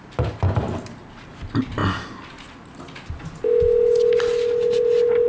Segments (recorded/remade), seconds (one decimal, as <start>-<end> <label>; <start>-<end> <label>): 0.0-5.3 recorded